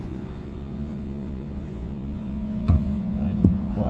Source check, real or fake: fake